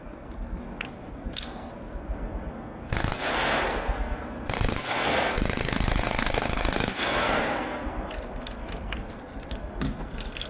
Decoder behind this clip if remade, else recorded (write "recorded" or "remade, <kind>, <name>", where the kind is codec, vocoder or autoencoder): remade, codec, SNAC